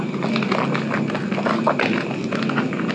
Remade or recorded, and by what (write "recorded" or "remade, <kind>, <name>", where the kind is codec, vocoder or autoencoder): recorded